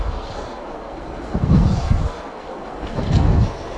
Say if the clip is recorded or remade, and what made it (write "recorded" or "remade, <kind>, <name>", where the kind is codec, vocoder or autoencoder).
remade, codec, SNAC